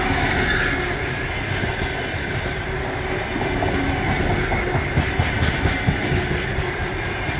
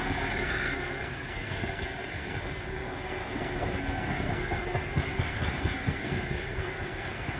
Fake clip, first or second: second